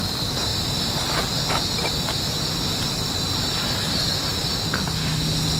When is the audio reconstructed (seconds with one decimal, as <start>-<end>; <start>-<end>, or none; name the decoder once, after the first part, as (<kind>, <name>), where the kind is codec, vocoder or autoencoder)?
none